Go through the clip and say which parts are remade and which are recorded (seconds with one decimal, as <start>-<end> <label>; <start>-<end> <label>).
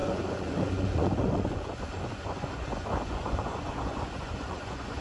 0.0-5.0 remade